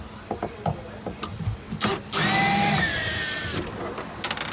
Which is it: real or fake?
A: real